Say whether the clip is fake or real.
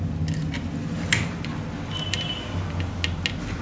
real